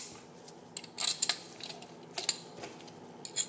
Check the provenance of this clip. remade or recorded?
recorded